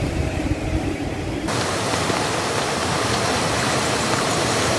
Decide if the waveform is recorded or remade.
remade